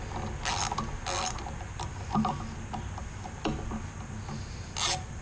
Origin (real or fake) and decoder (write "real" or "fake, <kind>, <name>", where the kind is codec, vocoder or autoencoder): real